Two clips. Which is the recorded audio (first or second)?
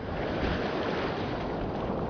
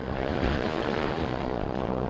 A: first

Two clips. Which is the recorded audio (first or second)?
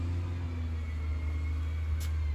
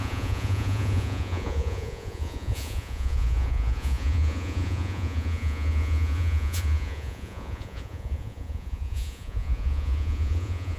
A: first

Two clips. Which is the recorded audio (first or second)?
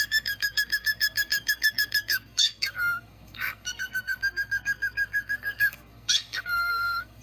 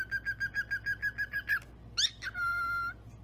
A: second